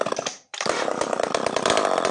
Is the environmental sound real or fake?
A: fake